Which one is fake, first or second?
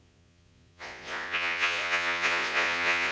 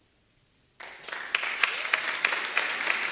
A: first